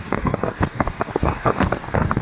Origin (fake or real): fake